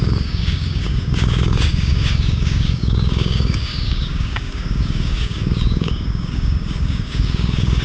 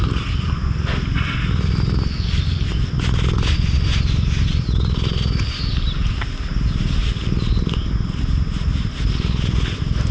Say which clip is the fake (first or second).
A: first